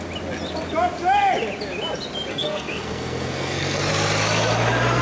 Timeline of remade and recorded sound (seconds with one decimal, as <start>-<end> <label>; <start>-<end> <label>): 0.0-2.3 recorded; 2.3-3.9 remade; 3.9-5.0 recorded